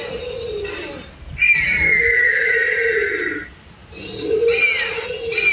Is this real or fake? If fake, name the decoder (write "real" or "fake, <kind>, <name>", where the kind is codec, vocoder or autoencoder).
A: real